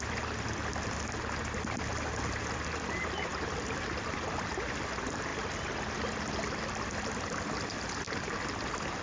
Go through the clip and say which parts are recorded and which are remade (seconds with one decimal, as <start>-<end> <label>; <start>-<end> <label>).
0.0-9.0 recorded